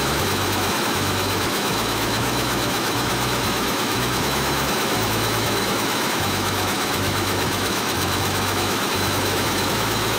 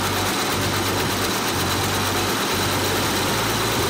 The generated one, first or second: first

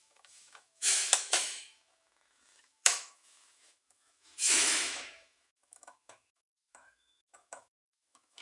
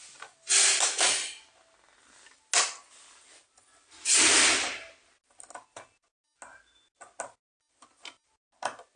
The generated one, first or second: first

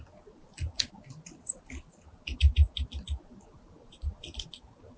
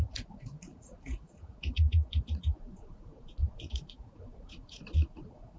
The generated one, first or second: second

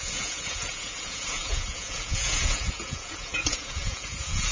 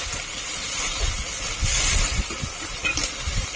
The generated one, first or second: first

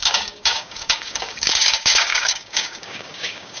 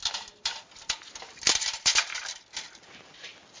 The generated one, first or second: first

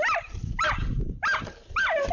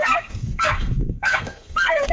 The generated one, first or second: second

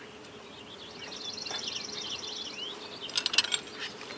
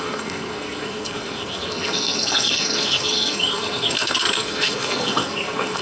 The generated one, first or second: second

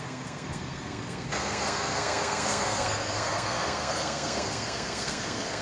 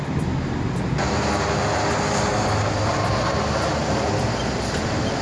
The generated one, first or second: first